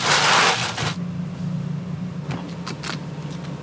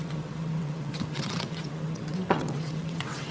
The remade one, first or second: second